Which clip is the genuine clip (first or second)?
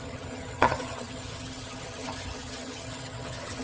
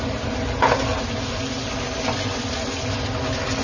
second